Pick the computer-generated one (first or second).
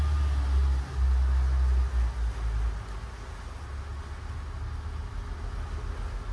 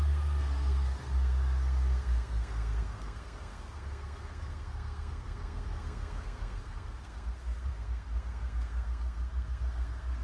second